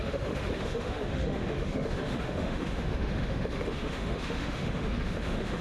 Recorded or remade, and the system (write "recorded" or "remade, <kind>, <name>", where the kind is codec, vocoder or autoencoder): remade, autoencoder, DAC-VAE